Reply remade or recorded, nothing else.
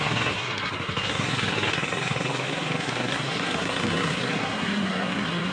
remade